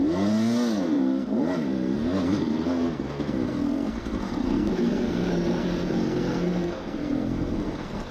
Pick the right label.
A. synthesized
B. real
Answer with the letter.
A